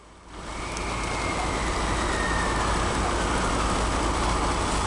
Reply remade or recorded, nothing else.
recorded